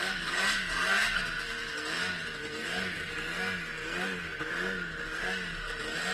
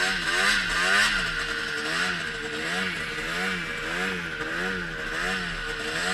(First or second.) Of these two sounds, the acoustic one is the second